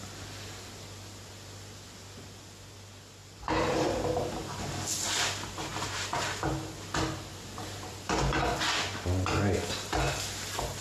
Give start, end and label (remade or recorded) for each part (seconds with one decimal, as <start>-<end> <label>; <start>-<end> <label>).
0.0-5.7 recorded; 5.7-6.5 remade; 6.5-7.3 recorded; 7.3-8.3 remade; 8.3-10.8 recorded